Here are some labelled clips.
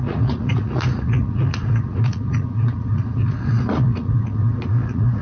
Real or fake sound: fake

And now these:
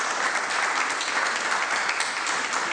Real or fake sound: real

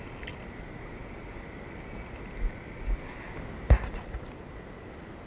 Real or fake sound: real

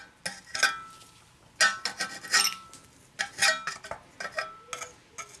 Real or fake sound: real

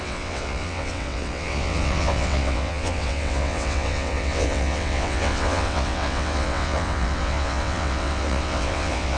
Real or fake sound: fake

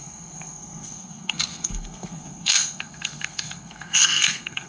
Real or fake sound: fake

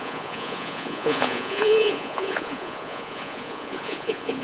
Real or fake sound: fake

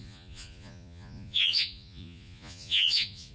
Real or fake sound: fake